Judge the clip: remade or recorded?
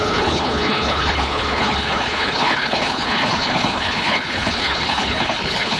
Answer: remade